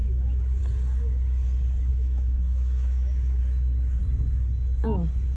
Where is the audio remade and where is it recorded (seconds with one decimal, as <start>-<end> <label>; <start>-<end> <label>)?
0.0-0.6 remade; 0.6-1.9 recorded; 1.9-3.4 remade; 3.4-5.4 recorded